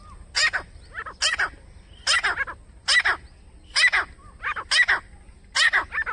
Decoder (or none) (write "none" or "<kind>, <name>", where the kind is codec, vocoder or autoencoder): none